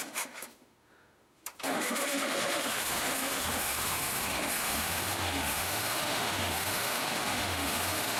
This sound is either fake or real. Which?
fake